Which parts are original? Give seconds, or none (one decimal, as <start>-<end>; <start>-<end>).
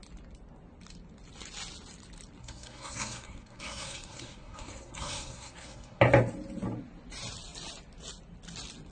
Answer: 0.0-2.4; 6.0-8.9